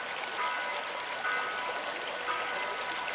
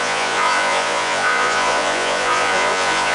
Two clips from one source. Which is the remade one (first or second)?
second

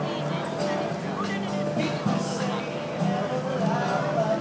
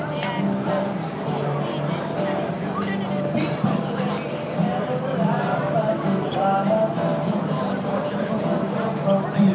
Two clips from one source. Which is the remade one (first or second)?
second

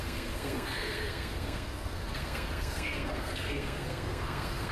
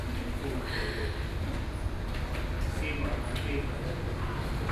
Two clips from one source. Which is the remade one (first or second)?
first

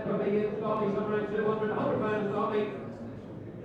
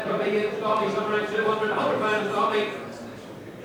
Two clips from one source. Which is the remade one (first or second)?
second